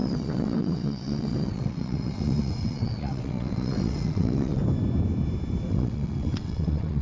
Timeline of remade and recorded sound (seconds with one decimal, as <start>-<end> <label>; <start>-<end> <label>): 0.0-4.6 remade; 4.6-5.7 recorded; 5.7-7.0 remade